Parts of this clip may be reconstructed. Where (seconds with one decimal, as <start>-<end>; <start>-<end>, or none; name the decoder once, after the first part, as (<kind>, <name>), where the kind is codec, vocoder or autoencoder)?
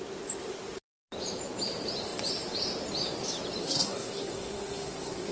3.6-5.3 (codec, SNAC)